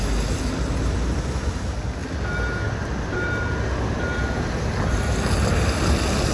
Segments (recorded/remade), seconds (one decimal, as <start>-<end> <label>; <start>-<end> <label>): 0.0-6.3 recorded